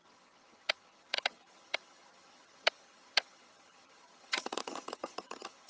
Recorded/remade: remade